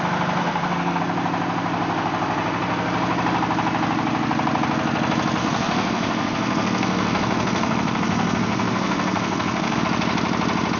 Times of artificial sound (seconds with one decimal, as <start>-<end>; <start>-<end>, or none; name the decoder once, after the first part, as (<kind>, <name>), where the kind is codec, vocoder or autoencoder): 0.4-1.0 (codec, SNAC); 5.4-9.8